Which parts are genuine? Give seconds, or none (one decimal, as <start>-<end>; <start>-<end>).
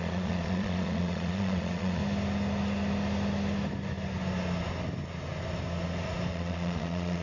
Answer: 2.0-6.3